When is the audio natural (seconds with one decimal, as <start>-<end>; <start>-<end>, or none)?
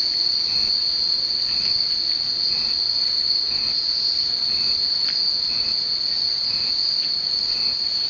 0.0-8.1